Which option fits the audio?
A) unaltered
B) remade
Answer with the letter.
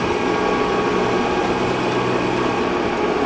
A